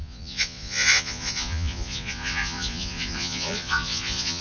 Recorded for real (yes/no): no